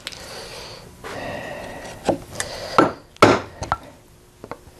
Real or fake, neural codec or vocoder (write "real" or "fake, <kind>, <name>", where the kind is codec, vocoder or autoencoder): real